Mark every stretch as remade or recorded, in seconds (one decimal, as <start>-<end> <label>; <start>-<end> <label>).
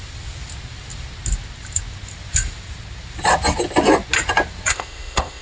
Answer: 0.0-4.7 recorded; 4.7-5.4 remade